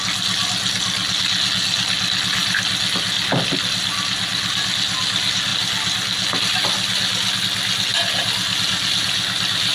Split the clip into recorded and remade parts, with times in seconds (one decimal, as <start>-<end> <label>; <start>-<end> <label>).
0.0-9.7 recorded

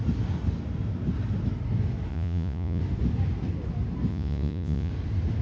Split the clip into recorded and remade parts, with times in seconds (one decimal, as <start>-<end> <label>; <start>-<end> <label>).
0.0-2.1 recorded; 2.1-2.8 remade; 2.8-4.1 recorded; 4.1-4.9 remade; 4.9-5.4 recorded

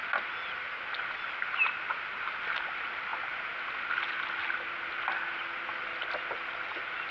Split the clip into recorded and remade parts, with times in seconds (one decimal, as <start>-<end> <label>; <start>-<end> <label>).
0.0-7.1 recorded